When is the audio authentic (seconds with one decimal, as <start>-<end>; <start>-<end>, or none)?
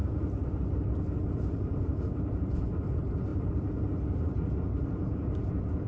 0.0-5.9